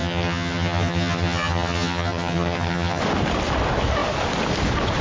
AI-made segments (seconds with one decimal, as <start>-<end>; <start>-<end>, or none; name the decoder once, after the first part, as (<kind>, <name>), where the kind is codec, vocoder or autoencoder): 0.0-3.0 (vocoder, HiFi-GAN)